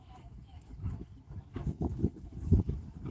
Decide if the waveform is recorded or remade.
remade